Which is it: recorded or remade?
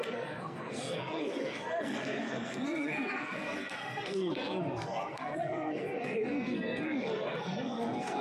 remade